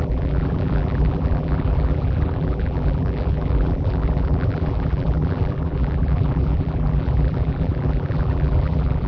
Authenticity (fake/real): fake